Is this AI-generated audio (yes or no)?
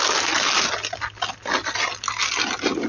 no